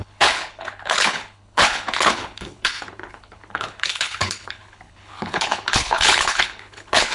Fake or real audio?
fake